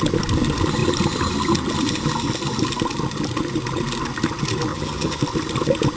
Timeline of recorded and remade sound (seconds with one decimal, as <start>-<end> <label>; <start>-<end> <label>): 0.0-4.7 recorded; 4.7-5.2 remade; 5.2-6.0 recorded